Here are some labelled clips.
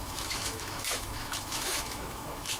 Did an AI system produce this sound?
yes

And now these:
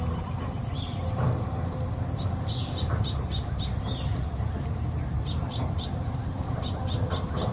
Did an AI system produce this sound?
yes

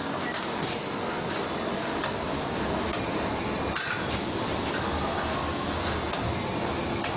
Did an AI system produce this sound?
no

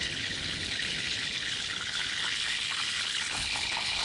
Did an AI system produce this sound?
yes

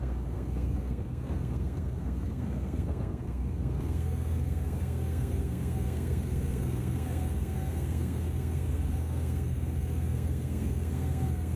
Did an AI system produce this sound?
yes